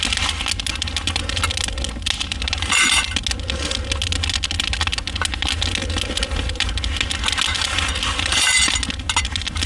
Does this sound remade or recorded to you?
recorded